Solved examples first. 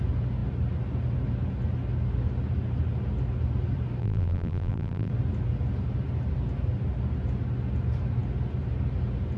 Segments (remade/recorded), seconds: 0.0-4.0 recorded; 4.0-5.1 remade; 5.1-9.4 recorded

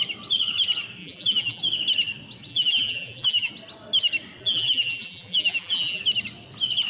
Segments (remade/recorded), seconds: 0.0-1.0 recorded; 1.0-1.6 remade; 1.6-2.5 recorded; 2.5-3.5 remade; 3.5-4.4 recorded; 4.4-6.0 remade; 6.0-6.9 recorded